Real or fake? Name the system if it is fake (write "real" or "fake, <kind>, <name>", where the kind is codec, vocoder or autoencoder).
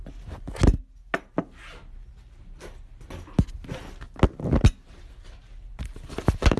real